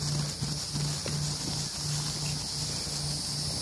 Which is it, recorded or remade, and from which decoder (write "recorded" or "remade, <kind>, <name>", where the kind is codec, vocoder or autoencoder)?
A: recorded